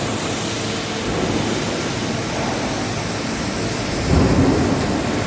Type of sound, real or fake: real